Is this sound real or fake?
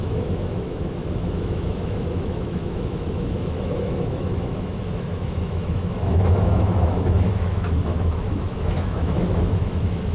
fake